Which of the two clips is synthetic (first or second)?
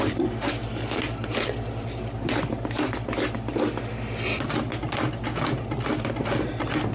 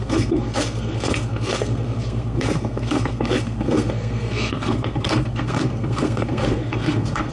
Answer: second